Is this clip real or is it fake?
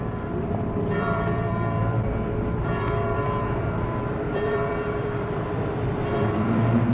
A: fake